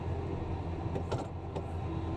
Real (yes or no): yes